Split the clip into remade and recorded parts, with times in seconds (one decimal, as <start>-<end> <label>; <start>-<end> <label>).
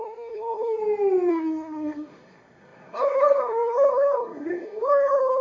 0.0-0.8 remade; 0.8-1.3 recorded; 1.3-5.4 remade